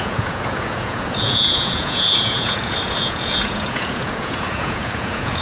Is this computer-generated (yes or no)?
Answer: yes